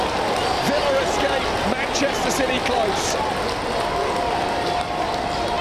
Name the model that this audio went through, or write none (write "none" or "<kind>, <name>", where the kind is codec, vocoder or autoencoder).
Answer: none